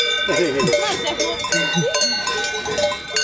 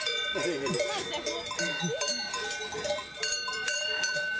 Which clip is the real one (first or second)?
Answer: first